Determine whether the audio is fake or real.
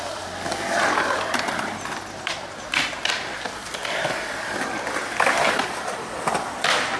fake